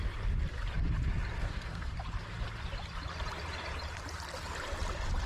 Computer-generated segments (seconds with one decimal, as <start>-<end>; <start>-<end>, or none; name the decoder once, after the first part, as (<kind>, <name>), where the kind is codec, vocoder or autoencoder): 1.4-1.9 (codec, SNAC)